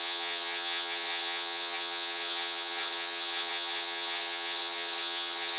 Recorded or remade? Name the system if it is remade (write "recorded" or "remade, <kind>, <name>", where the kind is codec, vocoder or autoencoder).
remade, vocoder, HiFi-GAN